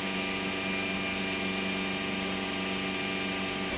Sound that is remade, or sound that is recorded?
recorded